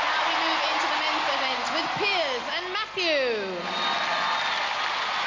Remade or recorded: recorded